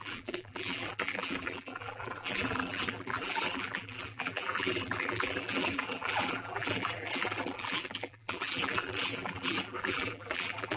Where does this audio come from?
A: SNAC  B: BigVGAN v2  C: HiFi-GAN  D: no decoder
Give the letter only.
B